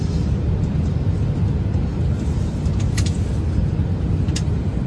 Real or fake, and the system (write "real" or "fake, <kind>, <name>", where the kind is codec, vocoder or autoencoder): real